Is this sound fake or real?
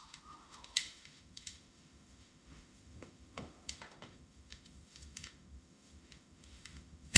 fake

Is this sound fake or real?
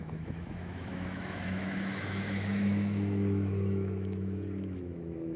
fake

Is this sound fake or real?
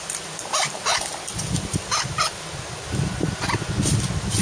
real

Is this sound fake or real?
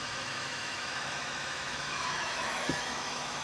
fake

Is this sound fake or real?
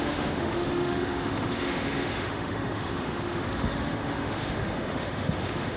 fake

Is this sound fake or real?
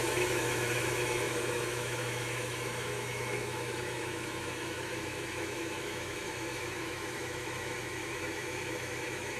fake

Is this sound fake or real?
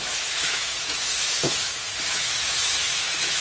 fake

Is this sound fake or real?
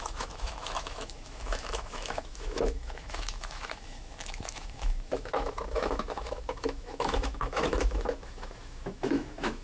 fake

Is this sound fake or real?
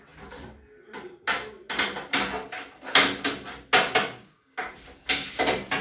real